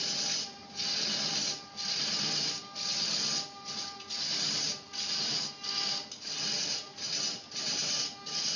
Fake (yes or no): no